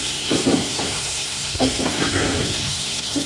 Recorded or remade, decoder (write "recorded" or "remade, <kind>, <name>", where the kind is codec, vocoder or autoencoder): remade, codec, SNAC